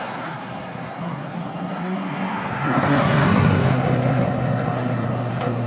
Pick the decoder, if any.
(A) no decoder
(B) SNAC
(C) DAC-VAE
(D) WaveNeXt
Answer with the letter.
B